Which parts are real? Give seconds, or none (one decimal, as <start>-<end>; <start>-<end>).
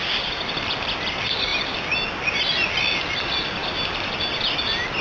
0.0-5.0